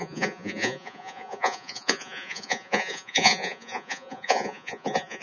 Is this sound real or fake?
fake